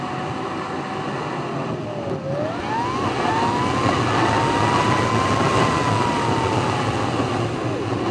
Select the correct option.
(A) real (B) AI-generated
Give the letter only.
A